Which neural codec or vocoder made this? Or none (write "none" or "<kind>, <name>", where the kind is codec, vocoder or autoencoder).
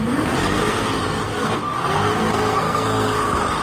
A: codec, SNAC